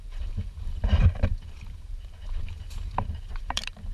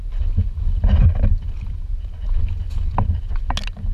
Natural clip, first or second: second